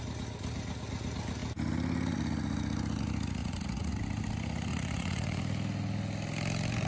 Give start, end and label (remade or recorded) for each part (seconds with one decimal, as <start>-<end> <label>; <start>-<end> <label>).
0.0-3.4 recorded; 3.4-3.9 remade; 3.9-4.7 recorded; 4.7-5.4 remade; 5.4-6.9 recorded